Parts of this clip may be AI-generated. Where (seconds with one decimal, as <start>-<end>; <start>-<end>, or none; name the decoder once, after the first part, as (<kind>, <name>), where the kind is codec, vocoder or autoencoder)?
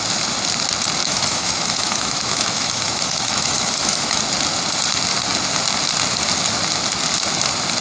1.0-4.2 (autoencoder, DAC-VAE)